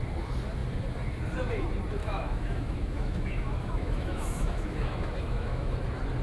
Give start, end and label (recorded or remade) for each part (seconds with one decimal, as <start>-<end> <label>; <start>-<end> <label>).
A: 0.0-2.0 recorded; 2.0-5.7 remade; 5.7-6.2 recorded